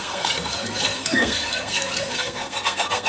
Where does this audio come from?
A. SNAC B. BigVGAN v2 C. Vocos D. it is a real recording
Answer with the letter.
A